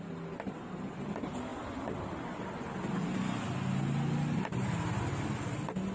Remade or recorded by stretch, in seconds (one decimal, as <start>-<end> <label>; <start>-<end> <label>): 0.0-5.9 recorded